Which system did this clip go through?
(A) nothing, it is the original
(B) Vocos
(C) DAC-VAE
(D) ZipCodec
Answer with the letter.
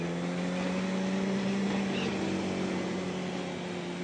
A